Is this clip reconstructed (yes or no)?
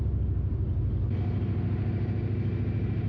no